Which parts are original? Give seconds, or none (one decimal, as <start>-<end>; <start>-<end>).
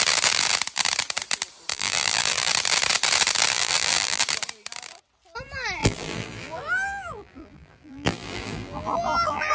0.0-1.7; 2.5-3.5; 4.2-5.8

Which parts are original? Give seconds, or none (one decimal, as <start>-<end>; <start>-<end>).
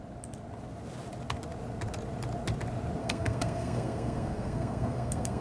0.0-3.0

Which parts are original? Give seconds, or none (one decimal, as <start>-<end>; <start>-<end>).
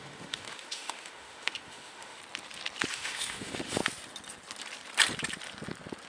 2.2-2.9; 3.8-6.1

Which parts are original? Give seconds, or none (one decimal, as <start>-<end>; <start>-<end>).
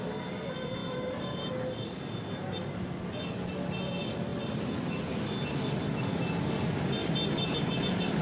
0.0-0.8; 1.5-7.0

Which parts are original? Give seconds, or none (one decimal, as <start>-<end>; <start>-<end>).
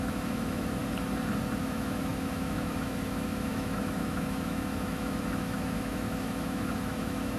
0.8-1.6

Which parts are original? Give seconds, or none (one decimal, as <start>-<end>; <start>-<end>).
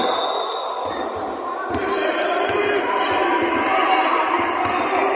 0.0-5.2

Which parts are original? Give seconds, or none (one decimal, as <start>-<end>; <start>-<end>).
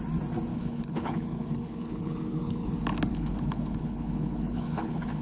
0.0-0.5; 2.7-3.1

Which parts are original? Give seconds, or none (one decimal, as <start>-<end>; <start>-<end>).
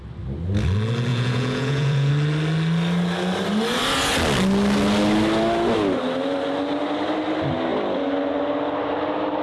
0.0-1.1; 2.1-9.4